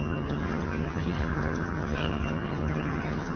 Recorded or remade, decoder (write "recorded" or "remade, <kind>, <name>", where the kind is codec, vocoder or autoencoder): remade, vocoder, HiFi-GAN